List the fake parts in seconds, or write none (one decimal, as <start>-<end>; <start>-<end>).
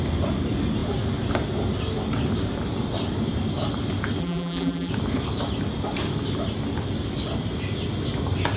4.2-4.9